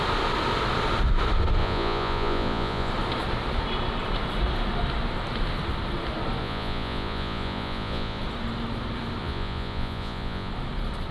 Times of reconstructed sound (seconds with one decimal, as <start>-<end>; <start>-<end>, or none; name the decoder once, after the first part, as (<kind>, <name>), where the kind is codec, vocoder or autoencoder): 1.6-2.9 (vocoder, Vocos); 6.4-8.2; 9.2-10.5